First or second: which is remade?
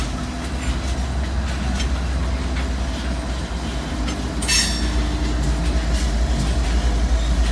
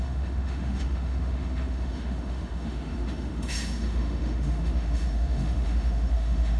second